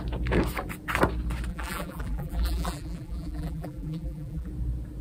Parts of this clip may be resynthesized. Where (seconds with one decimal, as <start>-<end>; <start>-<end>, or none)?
1.5-4.5

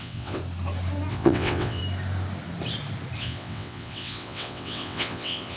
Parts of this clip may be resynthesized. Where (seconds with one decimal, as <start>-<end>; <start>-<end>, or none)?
0.0-0.4; 1.1-1.8; 3.2-5.6

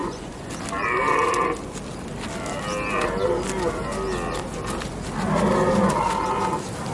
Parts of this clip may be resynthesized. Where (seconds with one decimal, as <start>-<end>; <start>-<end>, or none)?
0.0-0.5

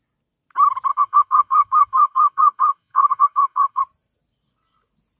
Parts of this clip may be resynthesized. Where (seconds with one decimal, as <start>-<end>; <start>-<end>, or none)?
0.9-3.8

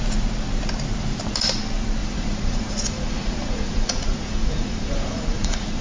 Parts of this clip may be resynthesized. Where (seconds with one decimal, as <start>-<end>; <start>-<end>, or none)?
2.0-5.8

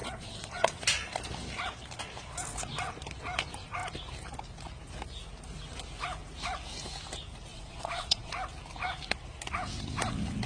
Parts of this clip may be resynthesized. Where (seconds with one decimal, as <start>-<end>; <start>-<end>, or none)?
0.0-0.8; 7.5-8.3

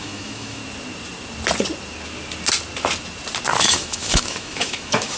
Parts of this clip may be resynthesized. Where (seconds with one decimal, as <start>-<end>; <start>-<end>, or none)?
0.0-0.6; 3.6-5.2